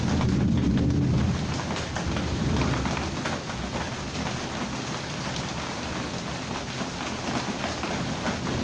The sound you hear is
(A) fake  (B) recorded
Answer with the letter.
B